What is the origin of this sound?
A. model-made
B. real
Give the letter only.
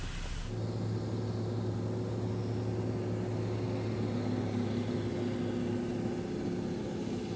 B